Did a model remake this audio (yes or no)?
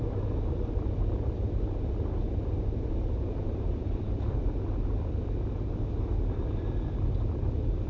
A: no